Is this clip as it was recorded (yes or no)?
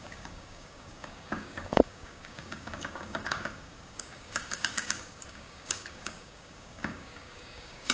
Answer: no